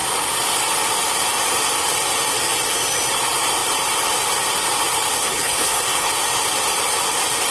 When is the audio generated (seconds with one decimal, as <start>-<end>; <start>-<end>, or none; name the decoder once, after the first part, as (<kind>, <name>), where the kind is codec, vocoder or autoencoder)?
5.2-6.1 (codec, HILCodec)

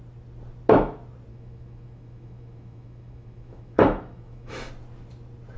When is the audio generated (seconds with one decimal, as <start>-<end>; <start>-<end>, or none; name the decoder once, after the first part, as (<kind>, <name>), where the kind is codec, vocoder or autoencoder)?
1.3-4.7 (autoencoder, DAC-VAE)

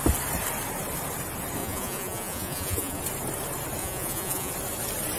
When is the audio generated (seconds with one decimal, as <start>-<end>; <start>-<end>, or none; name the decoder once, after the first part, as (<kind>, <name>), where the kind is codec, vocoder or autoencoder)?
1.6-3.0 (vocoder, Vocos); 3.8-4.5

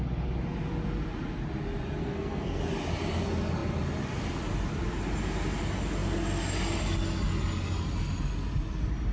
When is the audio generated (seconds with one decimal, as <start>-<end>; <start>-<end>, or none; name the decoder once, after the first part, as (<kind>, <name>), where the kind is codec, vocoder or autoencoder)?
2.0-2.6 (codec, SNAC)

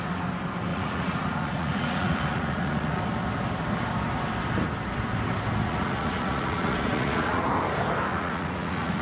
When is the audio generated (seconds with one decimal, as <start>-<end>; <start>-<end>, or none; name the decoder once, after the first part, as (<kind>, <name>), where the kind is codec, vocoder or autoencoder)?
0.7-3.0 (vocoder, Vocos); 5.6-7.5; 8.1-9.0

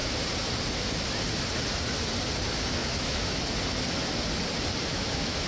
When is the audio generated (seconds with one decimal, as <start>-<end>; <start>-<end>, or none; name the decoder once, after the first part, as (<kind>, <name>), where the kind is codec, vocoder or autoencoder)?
2.8-3.4 (autoencoder, DAC-VAE); 4.9-5.5

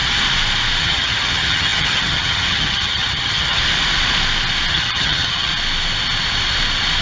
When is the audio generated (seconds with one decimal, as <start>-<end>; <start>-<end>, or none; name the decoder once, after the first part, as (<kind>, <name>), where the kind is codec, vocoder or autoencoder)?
0.8-3.6 (vocoder, HiFi-GAN); 4.7-5.5

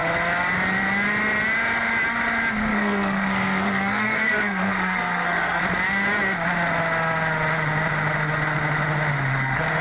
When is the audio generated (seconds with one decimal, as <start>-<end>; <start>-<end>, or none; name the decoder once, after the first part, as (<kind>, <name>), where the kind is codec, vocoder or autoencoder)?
2.5-5.6 (codec, SNAC)